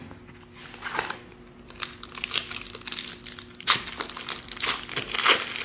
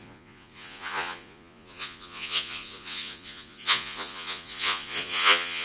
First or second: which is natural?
first